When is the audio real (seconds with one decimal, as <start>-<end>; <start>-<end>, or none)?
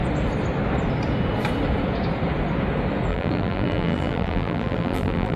0.0-3.1